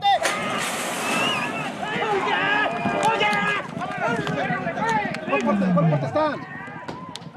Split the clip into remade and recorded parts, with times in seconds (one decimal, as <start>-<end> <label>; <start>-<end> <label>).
0.0-4.1 recorded; 4.1-4.9 remade; 4.9-7.4 recorded